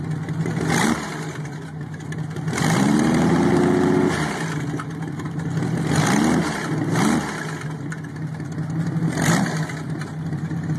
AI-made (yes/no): no